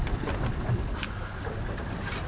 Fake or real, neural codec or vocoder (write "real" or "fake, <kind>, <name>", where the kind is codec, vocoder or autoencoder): real